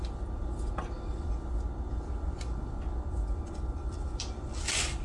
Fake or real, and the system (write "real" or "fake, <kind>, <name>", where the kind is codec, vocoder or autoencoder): real